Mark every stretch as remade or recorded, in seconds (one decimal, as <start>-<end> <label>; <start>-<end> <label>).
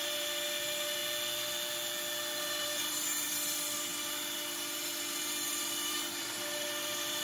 0.0-1.0 remade; 1.0-2.4 recorded; 2.4-7.2 remade